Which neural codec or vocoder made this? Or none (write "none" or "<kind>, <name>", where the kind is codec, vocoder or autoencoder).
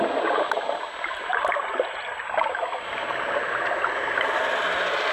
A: none